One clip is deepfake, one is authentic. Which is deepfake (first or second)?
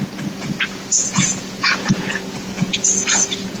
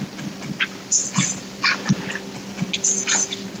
first